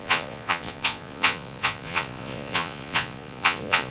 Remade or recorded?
remade